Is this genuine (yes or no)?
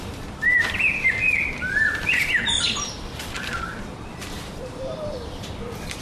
no